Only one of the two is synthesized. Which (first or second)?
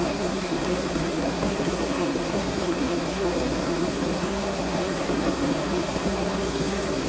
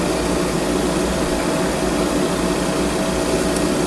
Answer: first